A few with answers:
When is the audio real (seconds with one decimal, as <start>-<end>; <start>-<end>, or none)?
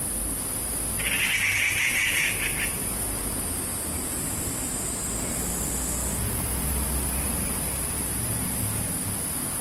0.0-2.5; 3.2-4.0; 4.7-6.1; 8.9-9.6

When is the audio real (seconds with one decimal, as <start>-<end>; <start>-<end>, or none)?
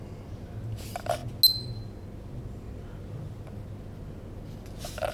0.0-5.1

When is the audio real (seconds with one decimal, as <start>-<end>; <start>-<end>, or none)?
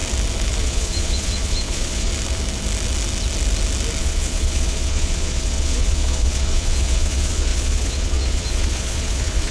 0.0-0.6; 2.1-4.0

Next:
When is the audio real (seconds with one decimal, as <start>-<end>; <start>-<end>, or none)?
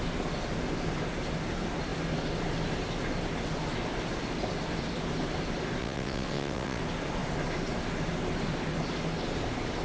0.0-5.8; 6.8-9.8